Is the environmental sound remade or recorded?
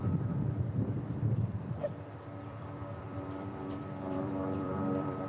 remade